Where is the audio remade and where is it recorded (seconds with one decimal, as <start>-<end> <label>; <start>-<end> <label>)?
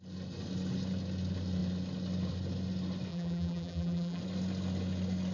0.0-3.1 recorded; 3.1-4.2 remade; 4.2-5.3 recorded